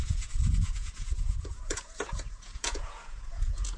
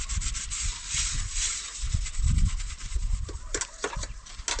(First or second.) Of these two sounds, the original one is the second